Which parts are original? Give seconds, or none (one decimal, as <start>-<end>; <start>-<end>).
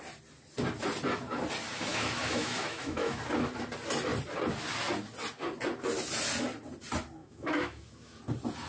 0.0-1.9; 3.2-7.2; 8.2-8.7